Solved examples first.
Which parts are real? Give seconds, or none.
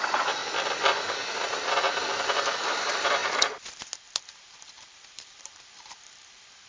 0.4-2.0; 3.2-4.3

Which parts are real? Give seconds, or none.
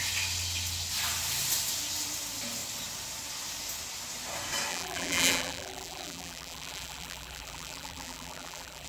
0.0-4.7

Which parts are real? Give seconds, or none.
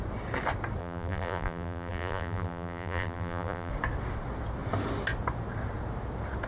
0.0-0.8; 3.7-6.5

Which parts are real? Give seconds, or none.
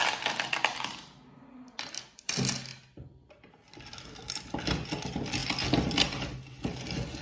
0.0-7.2